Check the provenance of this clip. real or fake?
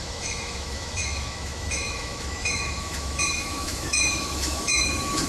fake